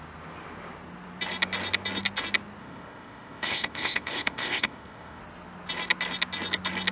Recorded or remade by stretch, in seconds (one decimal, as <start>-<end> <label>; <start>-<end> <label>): 0.0-2.6 recorded; 2.6-5.2 remade; 5.2-6.9 recorded

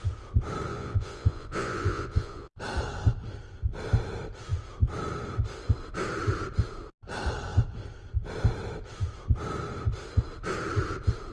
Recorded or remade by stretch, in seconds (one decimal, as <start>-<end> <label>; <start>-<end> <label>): 0.0-0.7 recorded; 0.7-2.6 remade; 2.6-11.3 recorded

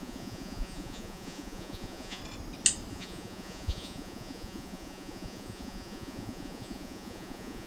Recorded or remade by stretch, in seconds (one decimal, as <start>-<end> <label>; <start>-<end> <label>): 0.0-2.2 remade; 2.2-2.9 recorded; 2.9-7.7 remade

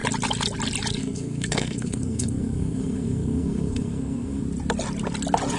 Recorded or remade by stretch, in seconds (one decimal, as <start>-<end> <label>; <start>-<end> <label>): 0.0-1.0 recorded; 1.0-4.4 remade; 4.4-5.6 recorded